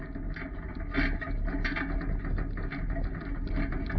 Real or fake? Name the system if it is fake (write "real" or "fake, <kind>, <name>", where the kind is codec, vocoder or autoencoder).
real